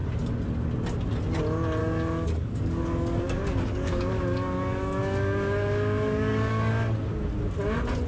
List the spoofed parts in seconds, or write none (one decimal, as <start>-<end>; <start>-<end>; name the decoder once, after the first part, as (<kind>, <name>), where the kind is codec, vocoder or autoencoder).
1.8-6.7 (codec, DAC)